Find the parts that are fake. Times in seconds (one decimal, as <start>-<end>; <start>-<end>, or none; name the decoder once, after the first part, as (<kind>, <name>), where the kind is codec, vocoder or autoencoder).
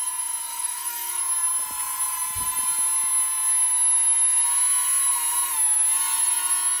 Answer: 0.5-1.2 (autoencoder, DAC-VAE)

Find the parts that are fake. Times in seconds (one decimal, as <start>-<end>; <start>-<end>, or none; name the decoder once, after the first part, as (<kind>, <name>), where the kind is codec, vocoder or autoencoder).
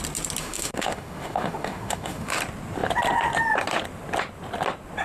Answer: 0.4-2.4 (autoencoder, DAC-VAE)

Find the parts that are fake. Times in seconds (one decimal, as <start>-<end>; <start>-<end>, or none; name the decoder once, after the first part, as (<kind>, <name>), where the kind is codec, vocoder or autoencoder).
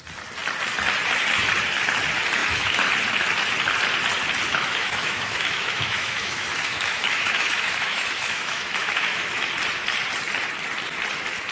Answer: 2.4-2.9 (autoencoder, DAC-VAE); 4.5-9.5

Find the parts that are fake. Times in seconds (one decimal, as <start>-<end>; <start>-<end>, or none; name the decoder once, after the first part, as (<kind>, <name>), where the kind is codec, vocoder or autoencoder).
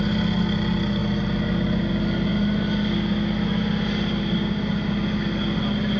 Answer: none